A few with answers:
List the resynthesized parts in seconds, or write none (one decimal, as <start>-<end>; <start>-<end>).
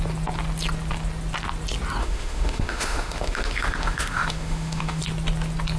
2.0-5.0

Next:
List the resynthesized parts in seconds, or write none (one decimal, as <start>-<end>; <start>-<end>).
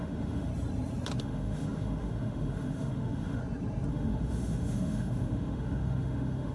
0.0-0.5; 1.2-3.4; 3.9-6.5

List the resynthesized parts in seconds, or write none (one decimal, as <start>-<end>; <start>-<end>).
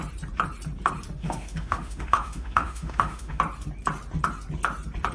1.2-3.4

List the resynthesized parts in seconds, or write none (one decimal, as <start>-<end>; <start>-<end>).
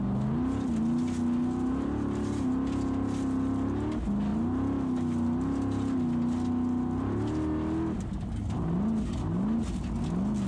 none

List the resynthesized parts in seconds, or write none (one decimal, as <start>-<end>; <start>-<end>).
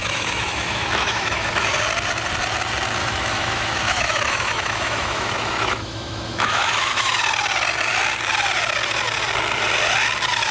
0.0-1.7; 3.0-7.2